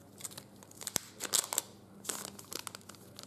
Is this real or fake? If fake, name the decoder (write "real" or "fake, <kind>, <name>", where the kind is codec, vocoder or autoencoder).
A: real